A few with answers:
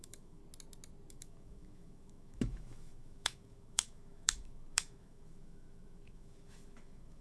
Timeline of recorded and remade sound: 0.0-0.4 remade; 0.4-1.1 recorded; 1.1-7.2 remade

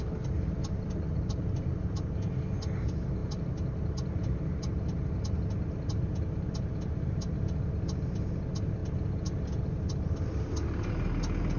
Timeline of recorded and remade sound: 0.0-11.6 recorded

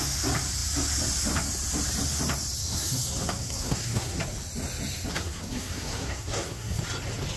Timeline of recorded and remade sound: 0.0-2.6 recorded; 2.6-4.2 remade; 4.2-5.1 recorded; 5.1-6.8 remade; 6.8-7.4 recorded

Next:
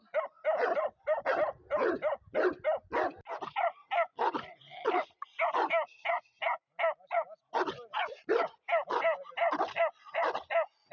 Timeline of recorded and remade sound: 0.0-10.9 recorded